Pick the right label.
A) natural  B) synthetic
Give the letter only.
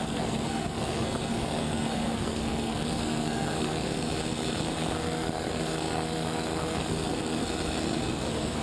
B